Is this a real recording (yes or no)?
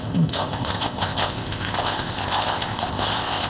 no